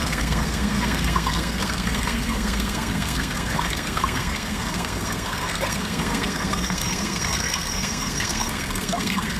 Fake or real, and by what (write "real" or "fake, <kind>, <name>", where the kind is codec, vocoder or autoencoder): fake, codec, SNAC